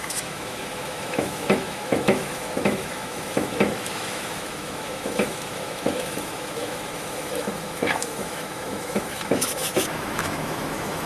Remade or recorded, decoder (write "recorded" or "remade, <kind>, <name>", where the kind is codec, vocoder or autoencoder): remade, autoencoder, DAC-VAE